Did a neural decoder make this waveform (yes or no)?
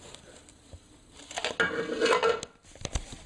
no